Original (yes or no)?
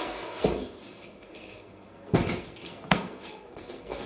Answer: no